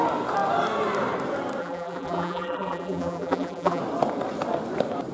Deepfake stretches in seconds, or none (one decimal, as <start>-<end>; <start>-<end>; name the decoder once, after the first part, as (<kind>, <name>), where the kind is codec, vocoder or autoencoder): 1.6-3.8 (vocoder, BigVGAN v2)